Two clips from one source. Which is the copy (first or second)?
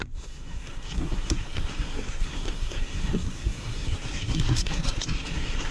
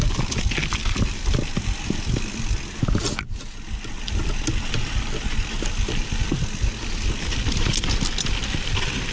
first